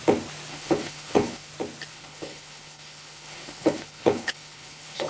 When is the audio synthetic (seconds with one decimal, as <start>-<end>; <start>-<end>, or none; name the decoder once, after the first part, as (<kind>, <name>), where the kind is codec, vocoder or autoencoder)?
0.5-1.5 (codec, HILCodec); 1.9-5.1